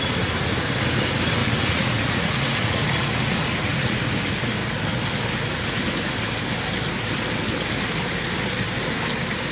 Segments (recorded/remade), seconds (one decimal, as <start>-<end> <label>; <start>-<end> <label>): 0.0-1.4 recorded; 1.4-4.0 remade; 4.0-9.5 recorded